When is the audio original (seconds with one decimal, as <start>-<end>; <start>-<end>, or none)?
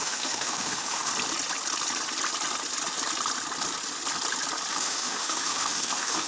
1.1-4.7